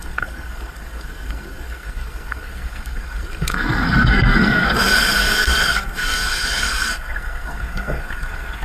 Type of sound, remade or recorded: remade